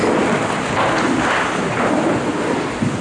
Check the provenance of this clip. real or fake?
real